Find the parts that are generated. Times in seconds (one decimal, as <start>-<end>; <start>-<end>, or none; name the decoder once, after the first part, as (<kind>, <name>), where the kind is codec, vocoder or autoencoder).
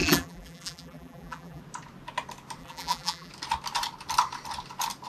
0.0-1.6 (vocoder, BigVGAN v2); 2.6-3.3